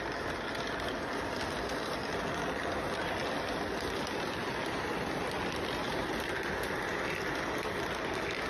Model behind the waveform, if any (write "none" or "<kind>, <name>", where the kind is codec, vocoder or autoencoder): none